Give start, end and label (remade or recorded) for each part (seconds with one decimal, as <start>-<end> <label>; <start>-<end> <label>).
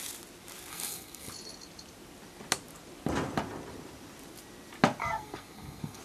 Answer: 0.0-0.7 recorded; 0.7-1.3 remade; 1.3-5.0 recorded; 5.0-6.0 remade